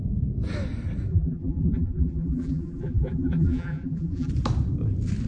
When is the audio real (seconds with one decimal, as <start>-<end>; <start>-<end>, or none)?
0.0-1.1; 4.3-5.3